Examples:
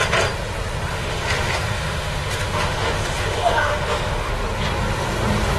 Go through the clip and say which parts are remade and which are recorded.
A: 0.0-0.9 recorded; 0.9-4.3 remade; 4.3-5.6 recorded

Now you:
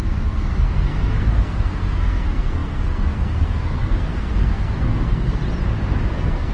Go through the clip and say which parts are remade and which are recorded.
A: 0.0-5.4 remade; 5.4-6.1 recorded; 6.1-6.5 remade

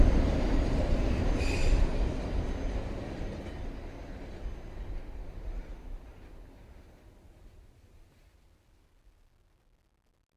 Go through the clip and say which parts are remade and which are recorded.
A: 0.0-10.4 recorded

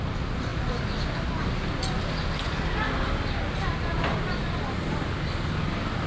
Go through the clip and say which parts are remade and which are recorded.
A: 0.0-6.1 recorded

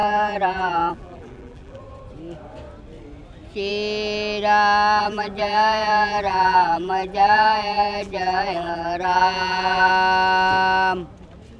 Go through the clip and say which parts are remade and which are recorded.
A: 0.0-1.8 remade; 1.8-5.0 recorded; 5.0-9.9 remade; 9.9-11.6 recorded

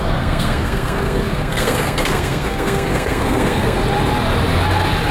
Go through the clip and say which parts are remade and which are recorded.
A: 0.0-3.8 remade; 3.8-5.1 recorded